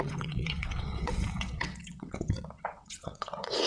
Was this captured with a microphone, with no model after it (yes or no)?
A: no